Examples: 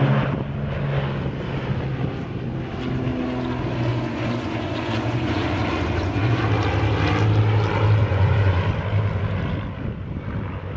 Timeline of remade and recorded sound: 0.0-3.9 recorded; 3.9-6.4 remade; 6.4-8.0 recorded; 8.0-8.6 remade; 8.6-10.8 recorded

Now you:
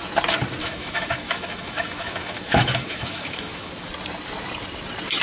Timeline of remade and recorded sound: 0.0-0.6 recorded; 0.6-3.7 remade; 3.7-5.2 recorded

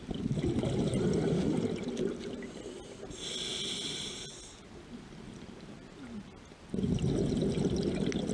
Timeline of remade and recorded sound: 0.0-8.3 recorded

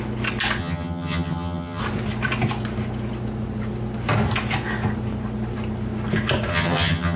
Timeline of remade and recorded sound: 0.0-0.6 recorded; 0.6-1.8 remade; 1.8-6.5 recorded; 6.5-7.2 remade

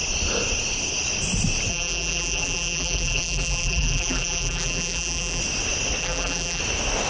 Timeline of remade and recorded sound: 0.0-1.7 recorded; 1.7-5.4 remade; 5.4-6.0 recorded; 6.0-6.6 remade; 6.6-7.1 recorded

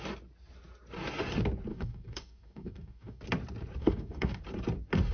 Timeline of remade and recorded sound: 0.0-1.7 recorded; 1.7-3.2 remade; 3.2-3.8 recorded; 3.8-4.4 remade; 4.4-5.1 recorded